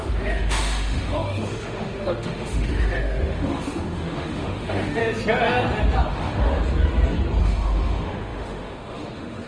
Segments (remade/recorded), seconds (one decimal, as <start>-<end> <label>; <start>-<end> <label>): 0.0-5.0 remade; 5.0-6.1 recorded; 6.1-6.5 remade; 6.5-7.4 recorded; 7.4-9.5 remade

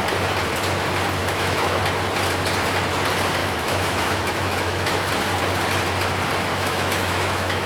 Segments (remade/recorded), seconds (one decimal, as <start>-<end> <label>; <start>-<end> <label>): 0.0-1.2 recorded; 1.2-1.8 remade; 1.8-3.4 recorded; 3.4-5.1 remade; 5.1-6.5 recorded; 6.5-7.7 remade

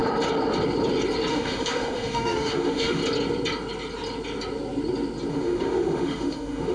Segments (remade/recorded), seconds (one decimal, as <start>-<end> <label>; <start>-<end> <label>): 0.0-1.3 recorded; 1.3-3.0 remade; 3.0-5.3 recorded; 5.3-6.7 remade